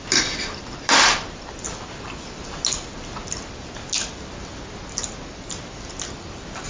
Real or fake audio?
real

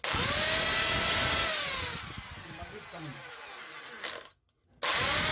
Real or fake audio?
real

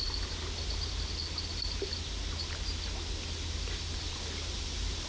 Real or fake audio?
real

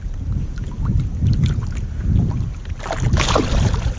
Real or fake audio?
real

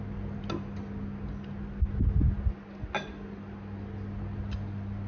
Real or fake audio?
real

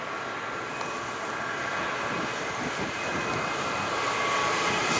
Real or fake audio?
real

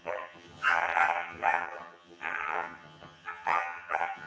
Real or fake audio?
fake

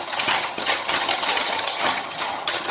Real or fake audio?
fake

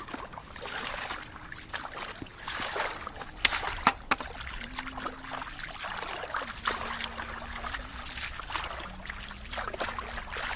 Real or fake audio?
real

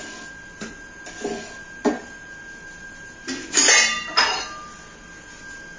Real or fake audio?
real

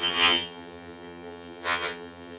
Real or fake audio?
fake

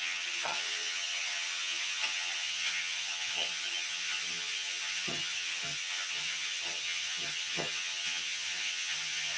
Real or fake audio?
fake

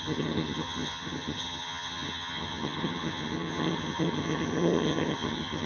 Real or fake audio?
fake